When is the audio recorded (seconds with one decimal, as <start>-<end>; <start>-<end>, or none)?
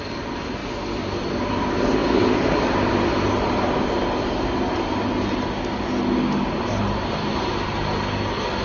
0.0-6.4; 7.5-8.6